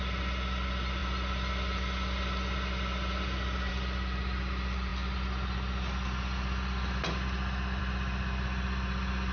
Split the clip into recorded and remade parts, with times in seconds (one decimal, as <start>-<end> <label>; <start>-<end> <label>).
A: 0.0-9.3 recorded